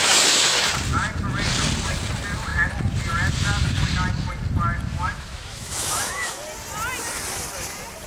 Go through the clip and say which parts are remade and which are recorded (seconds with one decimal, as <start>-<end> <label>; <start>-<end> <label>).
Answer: 0.0-0.7 remade; 0.7-4.9 recorded; 4.9-6.4 remade; 6.4-8.1 recorded